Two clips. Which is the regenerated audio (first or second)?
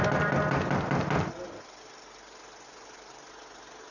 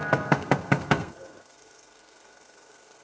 second